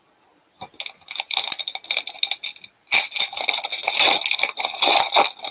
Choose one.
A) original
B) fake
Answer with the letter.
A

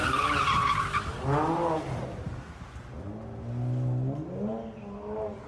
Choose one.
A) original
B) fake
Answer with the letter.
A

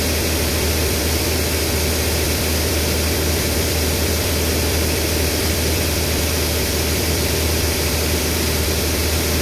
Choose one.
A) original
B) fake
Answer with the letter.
B